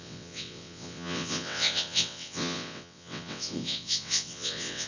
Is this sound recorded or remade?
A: remade